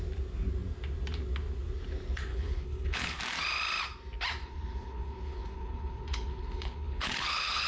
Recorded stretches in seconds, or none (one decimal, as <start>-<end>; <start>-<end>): 0.0-2.3; 3.2-4.4

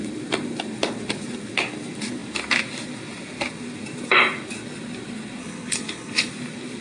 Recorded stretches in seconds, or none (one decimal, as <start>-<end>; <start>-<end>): 0.0-5.4; 6.3-6.8

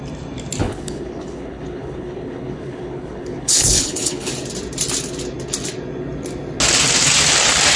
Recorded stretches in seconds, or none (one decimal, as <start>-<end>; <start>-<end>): 0.0-0.6; 4.3-7.8

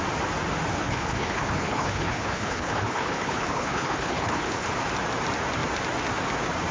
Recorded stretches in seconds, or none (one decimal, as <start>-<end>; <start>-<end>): 0.0-0.7; 4.7-6.7

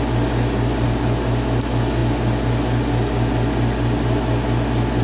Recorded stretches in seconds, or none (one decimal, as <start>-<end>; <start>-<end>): 0.0-5.0

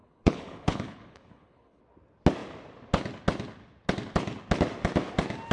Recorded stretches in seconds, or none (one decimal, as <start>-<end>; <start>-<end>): 1.8-5.5